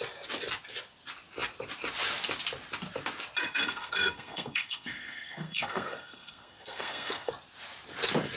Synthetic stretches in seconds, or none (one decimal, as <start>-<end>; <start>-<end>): 3.4-7.3